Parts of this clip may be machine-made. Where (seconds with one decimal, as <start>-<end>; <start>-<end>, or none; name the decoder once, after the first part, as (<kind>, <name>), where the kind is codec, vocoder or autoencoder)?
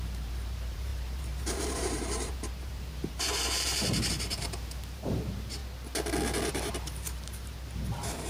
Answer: 0.0-5.6 (vocoder, BigVGAN v2); 6.5-8.3